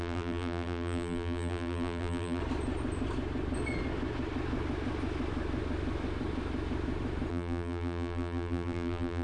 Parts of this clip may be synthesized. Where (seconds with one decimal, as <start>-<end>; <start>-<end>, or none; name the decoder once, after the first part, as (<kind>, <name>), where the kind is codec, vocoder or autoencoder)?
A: 0.0-2.4 (vocoder, BigVGAN v2); 7.3-9.2